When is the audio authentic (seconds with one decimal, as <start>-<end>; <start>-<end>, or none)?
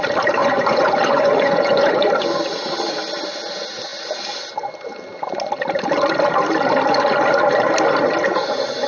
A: 0.0-0.4; 2.1-8.9